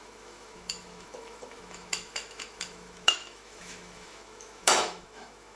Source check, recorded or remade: remade